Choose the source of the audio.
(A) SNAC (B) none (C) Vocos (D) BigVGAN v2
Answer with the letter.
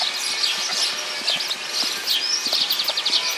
B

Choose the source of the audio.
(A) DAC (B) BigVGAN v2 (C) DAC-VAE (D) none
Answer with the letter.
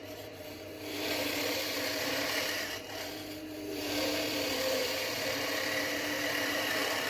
B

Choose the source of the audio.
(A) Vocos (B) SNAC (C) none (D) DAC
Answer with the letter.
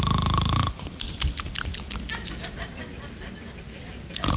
C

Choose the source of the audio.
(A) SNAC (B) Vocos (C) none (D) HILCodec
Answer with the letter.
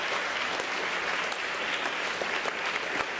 C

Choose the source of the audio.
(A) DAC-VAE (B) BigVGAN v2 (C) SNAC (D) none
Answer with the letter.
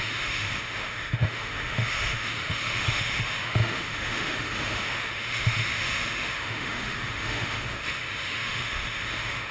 A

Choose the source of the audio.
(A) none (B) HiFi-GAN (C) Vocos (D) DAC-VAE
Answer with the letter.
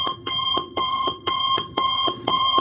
B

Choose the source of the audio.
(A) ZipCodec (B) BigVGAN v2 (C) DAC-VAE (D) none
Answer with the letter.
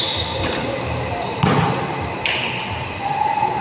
D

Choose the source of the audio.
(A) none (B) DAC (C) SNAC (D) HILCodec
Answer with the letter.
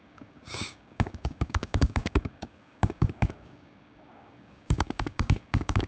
B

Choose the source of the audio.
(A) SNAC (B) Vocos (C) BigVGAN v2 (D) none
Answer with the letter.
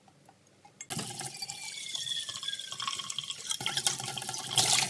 D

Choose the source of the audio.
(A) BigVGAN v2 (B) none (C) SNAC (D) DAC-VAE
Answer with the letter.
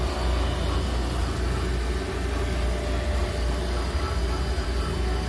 B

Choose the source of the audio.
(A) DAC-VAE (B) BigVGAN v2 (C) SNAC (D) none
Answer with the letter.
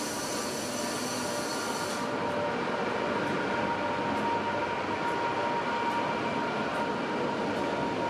D